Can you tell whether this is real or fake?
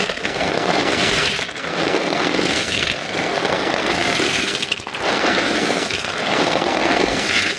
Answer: fake